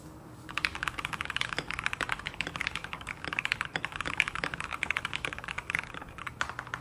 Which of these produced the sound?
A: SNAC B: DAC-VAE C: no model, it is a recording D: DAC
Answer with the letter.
D